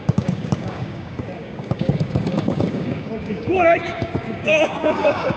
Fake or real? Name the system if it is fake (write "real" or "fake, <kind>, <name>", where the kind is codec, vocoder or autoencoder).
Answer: fake, codec, DAC